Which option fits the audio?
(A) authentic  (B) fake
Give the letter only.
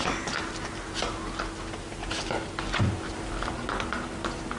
A